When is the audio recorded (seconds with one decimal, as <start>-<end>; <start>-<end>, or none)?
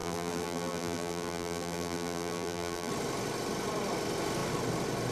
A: 2.9-5.1